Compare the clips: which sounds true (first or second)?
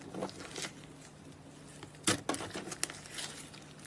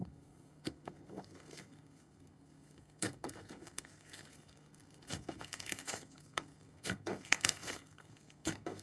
first